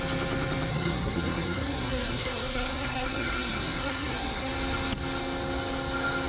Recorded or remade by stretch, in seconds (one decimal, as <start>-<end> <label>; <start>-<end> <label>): 0.0-0.7 recorded; 0.7-4.5 remade; 4.5-6.3 recorded